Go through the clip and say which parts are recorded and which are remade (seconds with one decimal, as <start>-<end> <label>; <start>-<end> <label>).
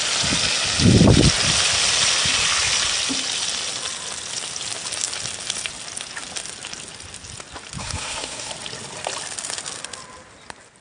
0.0-7.8 recorded; 7.8-8.5 remade; 8.5-10.8 recorded